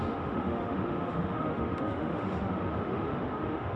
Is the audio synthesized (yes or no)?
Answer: yes